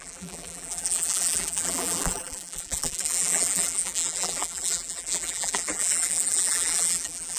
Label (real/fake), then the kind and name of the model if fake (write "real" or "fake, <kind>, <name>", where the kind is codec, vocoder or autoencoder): fake, vocoder, BigVGAN v2